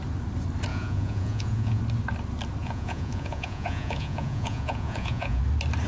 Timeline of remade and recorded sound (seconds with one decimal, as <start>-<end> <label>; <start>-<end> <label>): 0.0-0.7 recorded; 0.7-1.8 remade; 1.8-2.6 recorded; 2.6-5.4 remade; 5.4-5.9 recorded